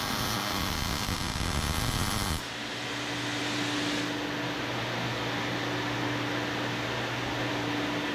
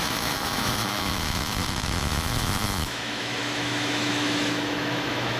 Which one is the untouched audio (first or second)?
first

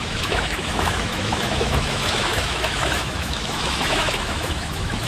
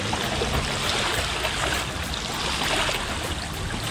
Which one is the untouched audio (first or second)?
second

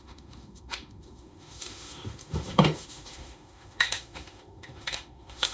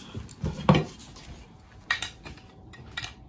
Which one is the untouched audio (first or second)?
second